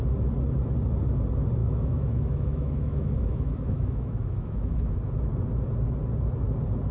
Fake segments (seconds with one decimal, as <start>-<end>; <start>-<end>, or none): 1.6-4.9